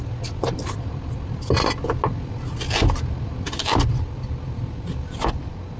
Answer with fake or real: real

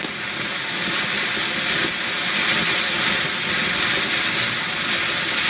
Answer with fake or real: real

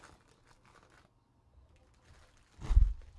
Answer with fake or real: real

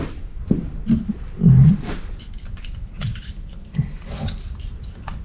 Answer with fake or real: real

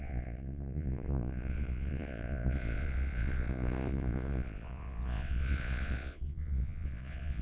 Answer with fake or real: fake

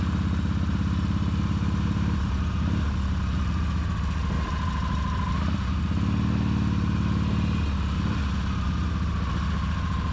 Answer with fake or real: real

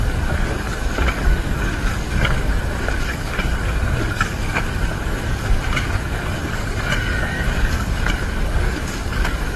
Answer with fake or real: fake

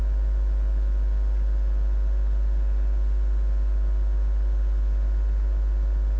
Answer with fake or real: real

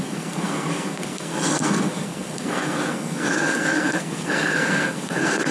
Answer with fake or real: fake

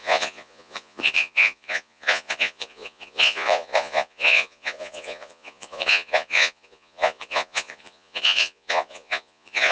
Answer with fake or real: fake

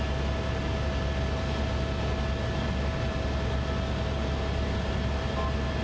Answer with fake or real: real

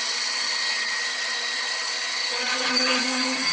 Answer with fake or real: fake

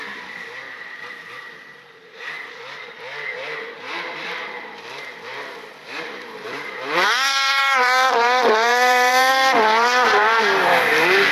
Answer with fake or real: fake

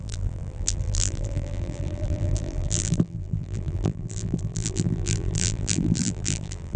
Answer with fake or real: fake